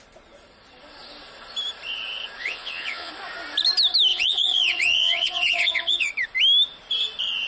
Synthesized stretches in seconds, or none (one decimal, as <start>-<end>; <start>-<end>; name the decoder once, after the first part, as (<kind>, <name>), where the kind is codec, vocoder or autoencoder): 2.4-3.1 (vocoder, Vocos); 4.1-6.1